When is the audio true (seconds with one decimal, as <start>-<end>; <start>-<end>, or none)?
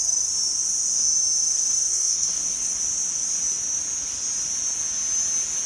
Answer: 0.0-1.9; 2.8-5.7